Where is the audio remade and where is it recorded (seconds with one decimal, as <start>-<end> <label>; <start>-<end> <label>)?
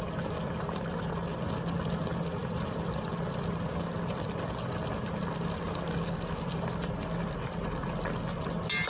0.0-8.9 recorded